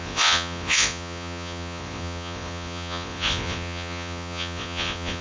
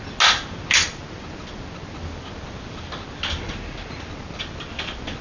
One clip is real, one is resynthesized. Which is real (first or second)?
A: second